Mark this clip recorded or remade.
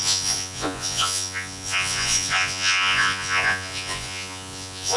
remade